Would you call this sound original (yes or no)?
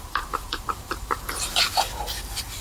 no